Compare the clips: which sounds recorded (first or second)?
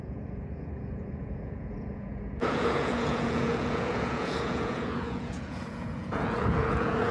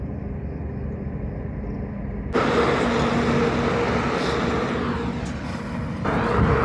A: second